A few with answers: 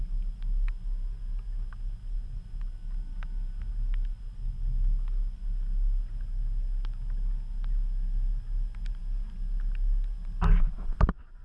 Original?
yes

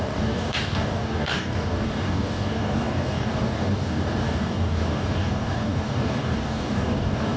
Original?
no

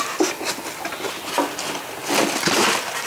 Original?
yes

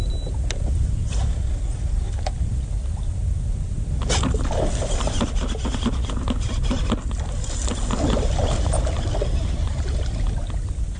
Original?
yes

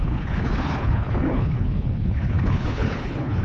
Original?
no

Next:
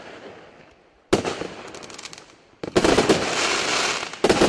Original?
yes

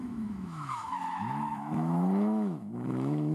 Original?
no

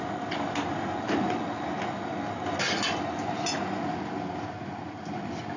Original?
yes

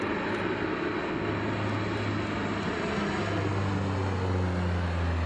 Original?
yes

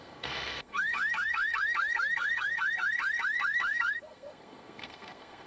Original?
no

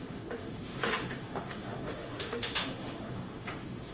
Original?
no